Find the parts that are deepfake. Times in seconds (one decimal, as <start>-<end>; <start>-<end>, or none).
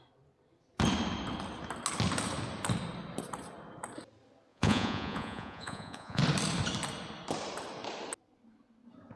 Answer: 4.5-6.2